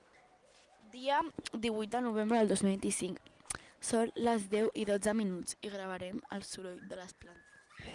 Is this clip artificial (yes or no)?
no